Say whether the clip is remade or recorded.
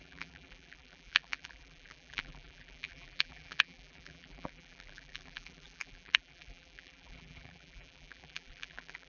remade